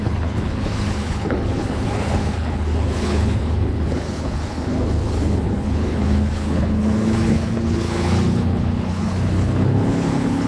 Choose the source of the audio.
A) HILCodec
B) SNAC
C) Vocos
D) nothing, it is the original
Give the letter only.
A